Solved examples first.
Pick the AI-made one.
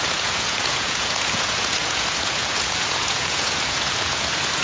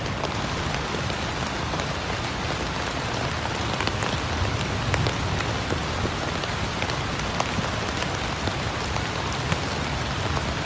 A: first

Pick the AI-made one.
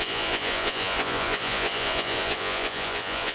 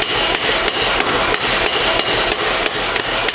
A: first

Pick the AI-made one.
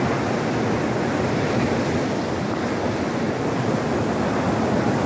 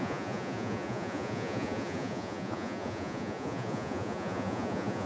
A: second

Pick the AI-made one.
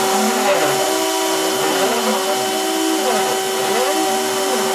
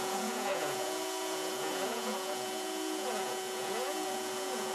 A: second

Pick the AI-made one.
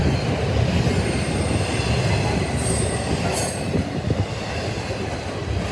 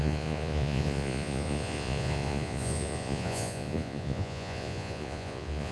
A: second